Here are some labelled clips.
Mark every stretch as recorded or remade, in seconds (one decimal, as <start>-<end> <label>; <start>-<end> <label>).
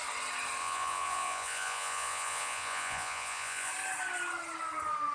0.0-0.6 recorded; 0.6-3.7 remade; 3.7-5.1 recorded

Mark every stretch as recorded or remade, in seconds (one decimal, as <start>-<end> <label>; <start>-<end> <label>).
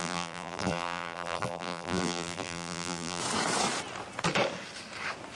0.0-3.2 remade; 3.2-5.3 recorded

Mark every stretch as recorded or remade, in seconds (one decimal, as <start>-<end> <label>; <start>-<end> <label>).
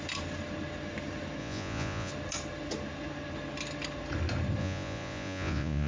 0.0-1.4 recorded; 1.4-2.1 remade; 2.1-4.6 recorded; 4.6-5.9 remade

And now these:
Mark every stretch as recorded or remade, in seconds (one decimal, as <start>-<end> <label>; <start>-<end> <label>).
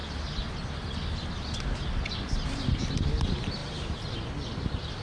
0.0-5.0 recorded